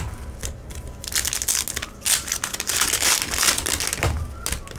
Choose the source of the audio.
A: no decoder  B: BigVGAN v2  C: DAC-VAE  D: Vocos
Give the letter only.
A